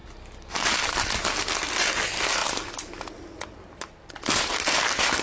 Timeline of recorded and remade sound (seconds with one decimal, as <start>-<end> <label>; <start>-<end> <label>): 0.0-5.2 recorded